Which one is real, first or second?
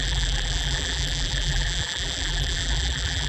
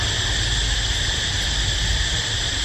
second